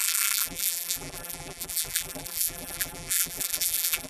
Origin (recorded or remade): remade